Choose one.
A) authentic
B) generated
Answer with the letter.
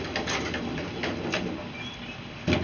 A